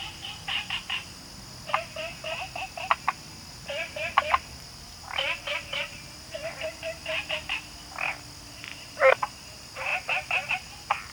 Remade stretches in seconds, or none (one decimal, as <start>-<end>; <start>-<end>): 0.0-1.0; 3.5-7.0; 8.5-9.9; 10.5-11.1